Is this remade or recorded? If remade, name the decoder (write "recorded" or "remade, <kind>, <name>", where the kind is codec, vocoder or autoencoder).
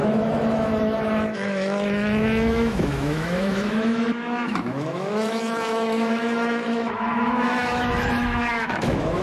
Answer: remade, autoencoder, DAC-VAE